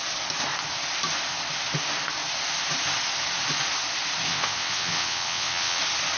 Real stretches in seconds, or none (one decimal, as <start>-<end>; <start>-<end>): 0.0-4.3; 5.8-6.2